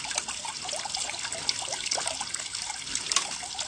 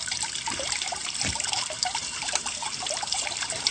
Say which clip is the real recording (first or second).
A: first